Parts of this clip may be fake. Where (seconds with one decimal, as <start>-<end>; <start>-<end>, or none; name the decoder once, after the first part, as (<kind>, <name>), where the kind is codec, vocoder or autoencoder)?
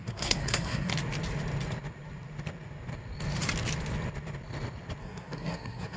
0.0-0.9 (codec, SNAC); 5.0-6.0